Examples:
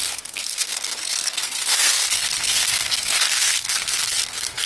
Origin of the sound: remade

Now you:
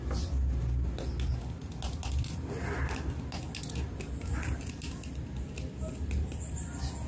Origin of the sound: recorded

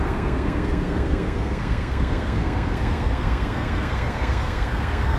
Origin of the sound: remade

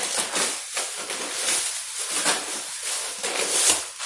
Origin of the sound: recorded